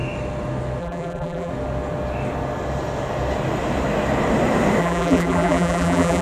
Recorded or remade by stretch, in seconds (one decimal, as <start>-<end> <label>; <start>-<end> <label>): 0.0-0.8 recorded; 0.8-1.5 remade; 1.5-4.8 recorded; 4.8-6.2 remade